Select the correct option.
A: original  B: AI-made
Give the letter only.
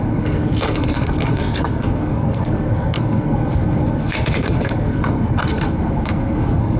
B